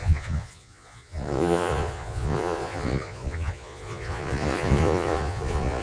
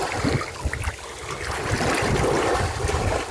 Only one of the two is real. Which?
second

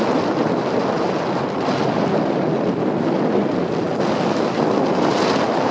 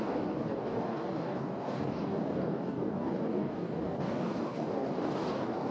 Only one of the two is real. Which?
first